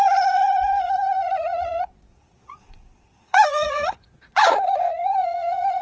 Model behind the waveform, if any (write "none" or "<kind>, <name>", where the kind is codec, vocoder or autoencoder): vocoder, Vocos